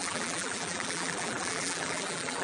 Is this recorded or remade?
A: remade